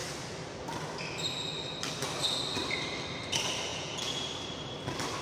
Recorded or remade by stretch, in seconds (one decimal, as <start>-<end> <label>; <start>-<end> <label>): 0.0-3.7 recorded; 3.7-4.3 remade; 4.3-5.2 recorded